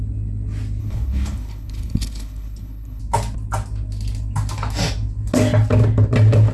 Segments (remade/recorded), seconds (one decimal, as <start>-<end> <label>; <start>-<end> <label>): 0.0-0.8 recorded; 0.8-3.0 remade; 3.0-6.5 recorded